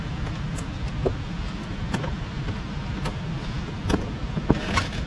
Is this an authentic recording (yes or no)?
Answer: yes